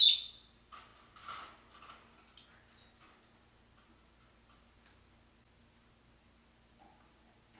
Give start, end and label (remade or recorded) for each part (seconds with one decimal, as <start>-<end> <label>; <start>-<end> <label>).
0.0-7.6 recorded